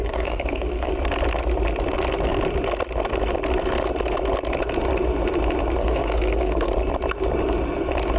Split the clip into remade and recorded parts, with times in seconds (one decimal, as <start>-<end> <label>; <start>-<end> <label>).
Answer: 0.0-0.9 remade; 0.9-5.8 recorded; 5.8-6.7 remade; 6.7-8.2 recorded